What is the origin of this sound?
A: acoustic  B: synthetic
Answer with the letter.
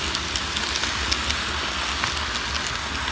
A